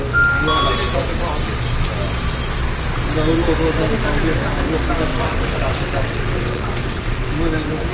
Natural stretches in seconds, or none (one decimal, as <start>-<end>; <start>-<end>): 0.0-5.1; 7.3-7.9